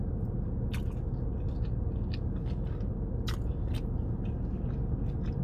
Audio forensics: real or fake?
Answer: real